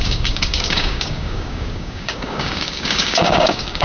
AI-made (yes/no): yes